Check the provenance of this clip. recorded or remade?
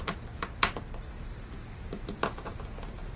recorded